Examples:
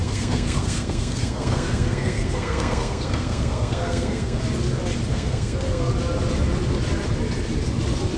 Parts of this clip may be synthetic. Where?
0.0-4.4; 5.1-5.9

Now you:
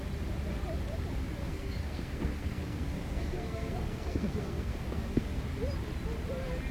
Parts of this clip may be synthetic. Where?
1.4-5.4

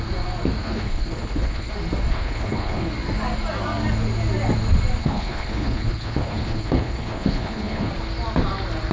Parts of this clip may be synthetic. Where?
0.6-1.7; 2.1-2.9; 5.0-7.9

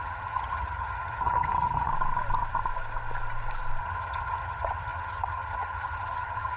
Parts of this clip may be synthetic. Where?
0.0-1.9; 3.8-6.6

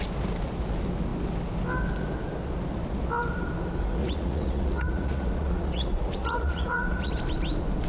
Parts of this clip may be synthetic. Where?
4.0-7.1

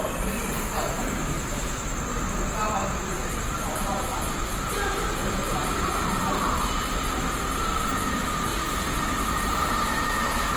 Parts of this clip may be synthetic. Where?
0.0-2.1; 3.6-5.6; 7.9-8.5; 9.0-10.6

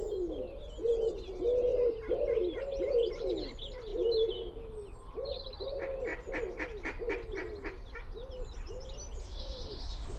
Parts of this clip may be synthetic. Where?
9.2-10.2